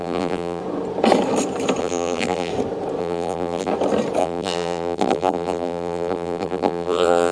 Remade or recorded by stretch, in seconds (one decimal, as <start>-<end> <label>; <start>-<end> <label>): 0.0-0.6 remade; 0.6-1.8 recorded; 1.8-2.5 remade; 2.5-3.0 recorded; 3.0-3.7 remade; 3.7-4.2 recorded; 4.2-7.3 remade